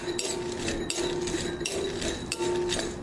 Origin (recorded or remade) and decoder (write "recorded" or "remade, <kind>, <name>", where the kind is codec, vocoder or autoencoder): recorded